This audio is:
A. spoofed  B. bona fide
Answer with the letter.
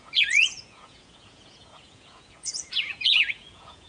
A